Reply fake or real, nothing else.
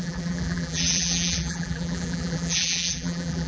fake